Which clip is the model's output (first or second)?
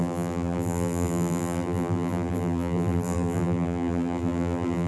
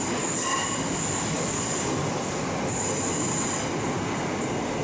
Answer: first